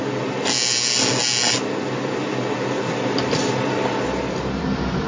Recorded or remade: recorded